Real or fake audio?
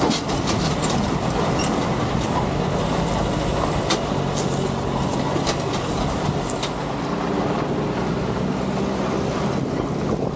real